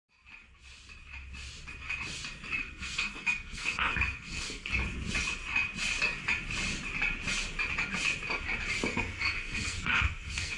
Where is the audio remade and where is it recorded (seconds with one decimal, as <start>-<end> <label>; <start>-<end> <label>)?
0.0-2.6 recorded; 2.6-4.7 remade; 4.7-8.9 recorded; 8.9-10.6 remade